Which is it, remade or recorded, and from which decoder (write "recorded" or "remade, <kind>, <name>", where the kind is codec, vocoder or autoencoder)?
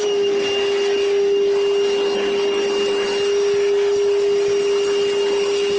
recorded